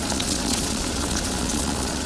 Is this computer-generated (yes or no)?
yes